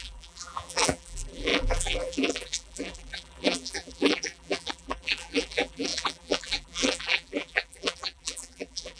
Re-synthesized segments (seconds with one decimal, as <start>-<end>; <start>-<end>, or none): 0.0-9.0